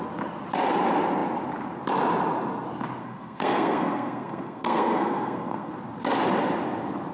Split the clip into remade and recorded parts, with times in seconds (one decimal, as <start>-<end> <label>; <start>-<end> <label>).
0.0-3.0 recorded; 3.0-5.7 remade; 5.7-7.1 recorded